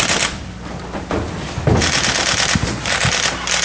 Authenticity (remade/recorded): recorded